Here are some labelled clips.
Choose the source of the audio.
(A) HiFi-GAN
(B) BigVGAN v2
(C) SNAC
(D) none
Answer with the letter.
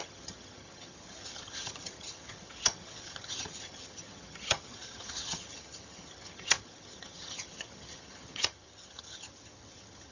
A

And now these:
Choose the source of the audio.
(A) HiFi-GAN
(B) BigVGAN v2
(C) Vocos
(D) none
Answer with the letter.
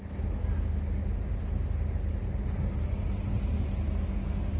D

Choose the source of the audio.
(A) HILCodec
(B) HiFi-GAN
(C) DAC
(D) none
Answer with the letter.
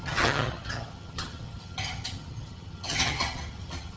B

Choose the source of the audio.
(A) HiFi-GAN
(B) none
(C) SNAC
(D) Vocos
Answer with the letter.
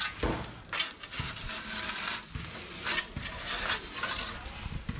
B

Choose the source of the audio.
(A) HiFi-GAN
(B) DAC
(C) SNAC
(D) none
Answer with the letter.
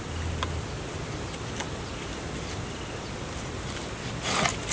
D